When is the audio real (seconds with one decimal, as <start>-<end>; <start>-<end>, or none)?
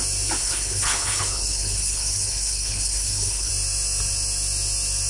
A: 0.0-0.4; 3.5-5.1